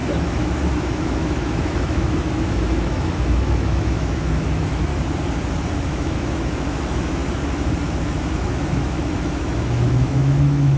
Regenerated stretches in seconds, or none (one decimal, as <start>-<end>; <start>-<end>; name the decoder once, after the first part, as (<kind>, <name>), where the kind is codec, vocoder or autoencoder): 0.0-4.9 (autoencoder, DAC-VAE); 5.8-10.8